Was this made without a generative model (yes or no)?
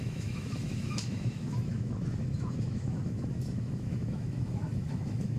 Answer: no